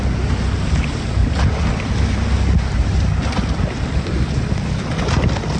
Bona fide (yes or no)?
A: yes